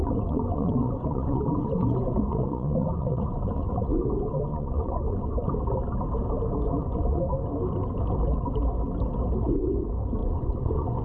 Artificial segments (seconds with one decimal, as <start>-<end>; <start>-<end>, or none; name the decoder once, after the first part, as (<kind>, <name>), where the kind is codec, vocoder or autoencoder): 0.0-3.9 (vocoder, Vocos); 4.5-5.5; 6.8-7.3; 10.2-11.0